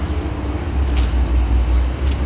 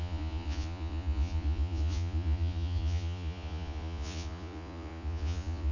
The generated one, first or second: second